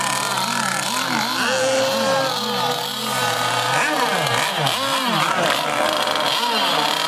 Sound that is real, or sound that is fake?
real